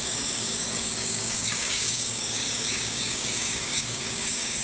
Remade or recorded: remade